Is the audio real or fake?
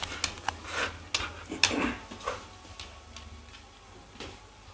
real